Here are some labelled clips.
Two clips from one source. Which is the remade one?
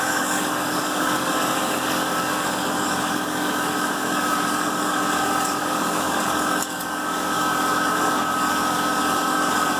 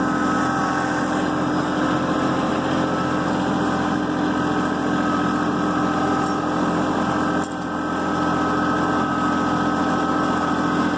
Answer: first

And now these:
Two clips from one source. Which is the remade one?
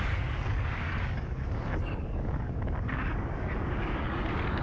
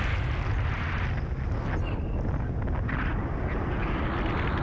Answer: first